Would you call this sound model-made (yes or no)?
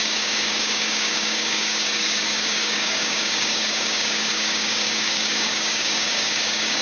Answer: yes